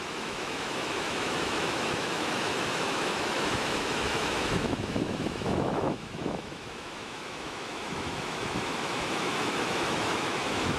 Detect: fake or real fake